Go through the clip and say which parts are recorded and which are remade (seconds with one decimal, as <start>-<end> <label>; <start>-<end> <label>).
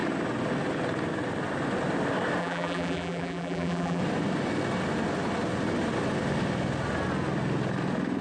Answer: 0.0-2.4 recorded; 2.4-4.0 remade; 4.0-8.2 recorded